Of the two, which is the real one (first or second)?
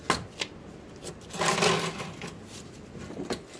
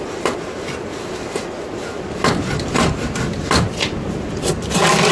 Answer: first